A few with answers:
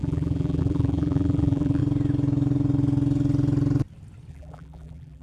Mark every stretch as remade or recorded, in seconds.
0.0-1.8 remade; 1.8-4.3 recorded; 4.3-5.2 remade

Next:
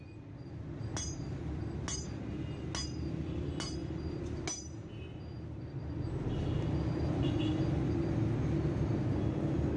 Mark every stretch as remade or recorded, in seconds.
0.0-9.8 recorded

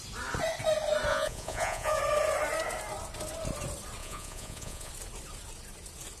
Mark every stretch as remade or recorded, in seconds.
0.0-1.1 recorded; 1.1-2.0 remade; 2.0-4.0 recorded; 4.0-4.9 remade; 4.9-6.2 recorded